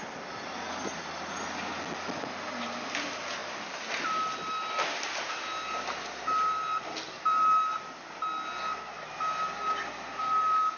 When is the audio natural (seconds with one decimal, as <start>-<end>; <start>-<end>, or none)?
0.0-10.8